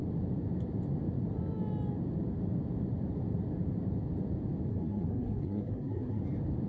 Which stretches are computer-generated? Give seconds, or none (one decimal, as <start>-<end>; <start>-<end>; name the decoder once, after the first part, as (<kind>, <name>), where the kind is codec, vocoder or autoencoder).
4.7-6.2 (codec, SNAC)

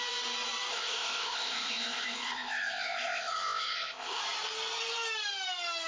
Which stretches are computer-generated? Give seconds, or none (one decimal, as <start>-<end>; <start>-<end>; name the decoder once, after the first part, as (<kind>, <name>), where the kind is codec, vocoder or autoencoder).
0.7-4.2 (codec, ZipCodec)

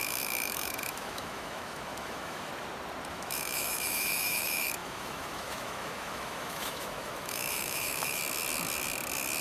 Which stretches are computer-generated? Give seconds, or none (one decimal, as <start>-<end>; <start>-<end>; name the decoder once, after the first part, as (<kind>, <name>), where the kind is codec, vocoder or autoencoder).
0.0-2.5 (autoencoder, DAC-VAE); 3.1-8.2

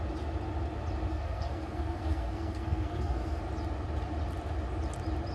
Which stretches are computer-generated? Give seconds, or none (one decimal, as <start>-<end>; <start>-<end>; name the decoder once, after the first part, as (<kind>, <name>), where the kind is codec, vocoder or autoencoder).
1.1-3.4 (codec, SNAC)